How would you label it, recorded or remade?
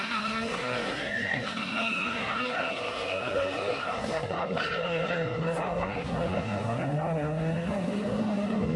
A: remade